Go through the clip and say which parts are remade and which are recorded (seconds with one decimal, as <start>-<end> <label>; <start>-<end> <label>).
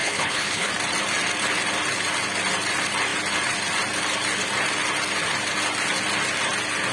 0.0-0.7 remade; 0.7-6.9 recorded